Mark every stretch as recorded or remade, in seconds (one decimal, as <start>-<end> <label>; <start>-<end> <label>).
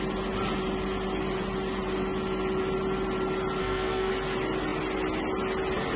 0.0-3.6 recorded; 3.6-4.1 remade; 4.1-6.0 recorded